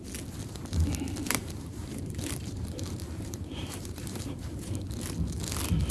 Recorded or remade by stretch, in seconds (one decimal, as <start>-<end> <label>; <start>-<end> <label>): 0.0-1.2 recorded; 1.2-4.7 remade; 4.7-5.9 recorded